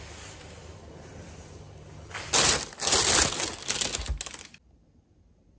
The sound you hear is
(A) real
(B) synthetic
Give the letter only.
A